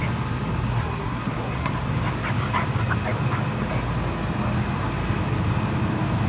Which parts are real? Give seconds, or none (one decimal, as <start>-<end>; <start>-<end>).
0.0-0.7; 1.7-6.3